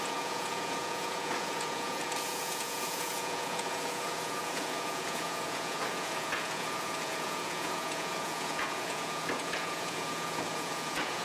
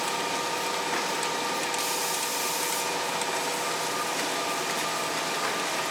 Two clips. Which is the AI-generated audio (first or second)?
first